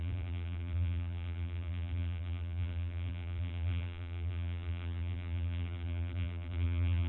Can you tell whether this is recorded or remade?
remade